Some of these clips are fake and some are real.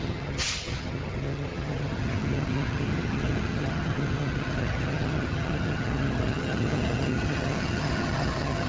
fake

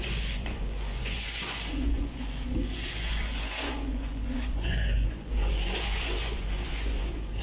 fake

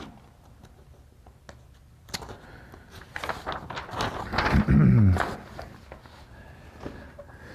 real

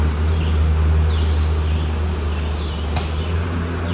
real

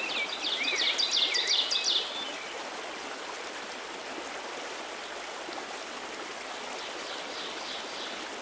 real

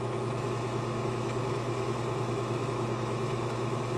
fake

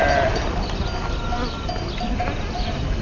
real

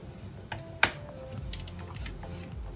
real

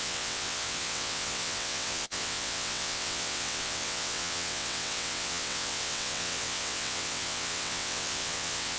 fake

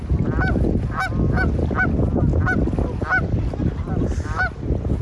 real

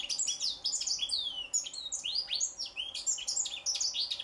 real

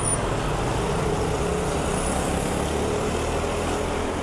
real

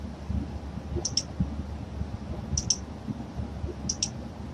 real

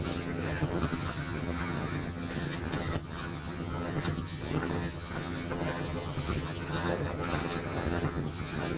fake